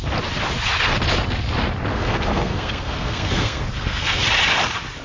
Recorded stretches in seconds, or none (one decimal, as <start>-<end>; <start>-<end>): 0.0-1.9; 4.2-5.0